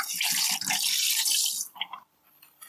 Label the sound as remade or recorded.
remade